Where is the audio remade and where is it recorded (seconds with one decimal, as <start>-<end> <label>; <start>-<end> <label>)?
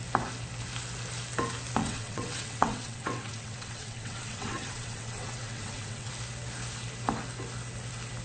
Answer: 0.0-1.8 recorded; 1.8-6.1 remade; 6.1-8.2 recorded